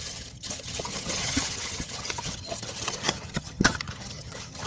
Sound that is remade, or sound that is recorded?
remade